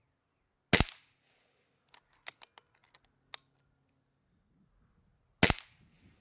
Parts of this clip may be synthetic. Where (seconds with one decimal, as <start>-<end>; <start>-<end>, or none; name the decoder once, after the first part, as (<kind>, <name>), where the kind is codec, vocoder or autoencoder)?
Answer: none

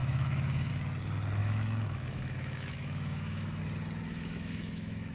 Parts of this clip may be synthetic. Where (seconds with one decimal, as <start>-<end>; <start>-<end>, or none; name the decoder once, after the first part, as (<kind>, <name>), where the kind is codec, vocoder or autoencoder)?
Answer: 0.0-0.7 (autoencoder, DAC-VAE); 1.4-3.6; 4.1-5.1

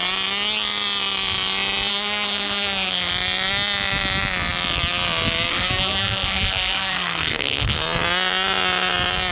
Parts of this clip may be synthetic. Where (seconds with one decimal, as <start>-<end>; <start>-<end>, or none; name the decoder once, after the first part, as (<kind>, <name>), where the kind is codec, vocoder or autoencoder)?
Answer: 1.9-3.1 (codec, SNAC); 5.5-7.8

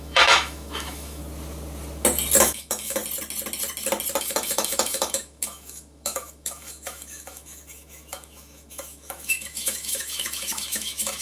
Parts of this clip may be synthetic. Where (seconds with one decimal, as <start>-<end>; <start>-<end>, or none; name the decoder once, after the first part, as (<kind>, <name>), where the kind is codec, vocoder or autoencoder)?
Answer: 0.0-1.2 (autoencoder, DAC-VAE); 2.4-3.0; 4.2-11.2